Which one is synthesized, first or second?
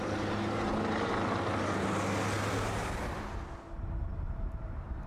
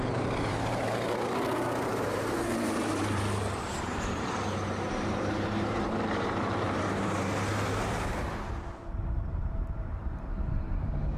second